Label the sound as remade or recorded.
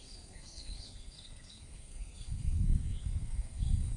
remade